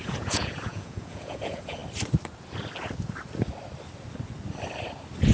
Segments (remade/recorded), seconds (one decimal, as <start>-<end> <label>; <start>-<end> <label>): 0.0-1.8 remade; 1.8-5.3 recorded